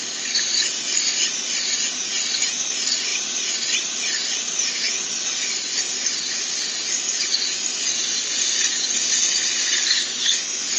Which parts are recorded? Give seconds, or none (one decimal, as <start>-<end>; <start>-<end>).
0.0-3.1; 4.0-10.8